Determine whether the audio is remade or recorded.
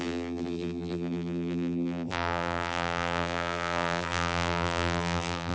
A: remade